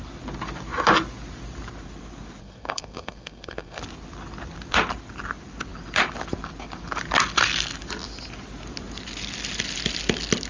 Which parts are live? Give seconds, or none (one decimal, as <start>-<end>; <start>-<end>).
0.0-2.4; 3.8-10.5